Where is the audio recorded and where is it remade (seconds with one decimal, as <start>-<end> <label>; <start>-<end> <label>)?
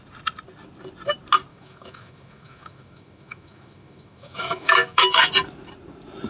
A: 0.0-1.5 recorded; 1.5-5.3 remade; 5.3-6.3 recorded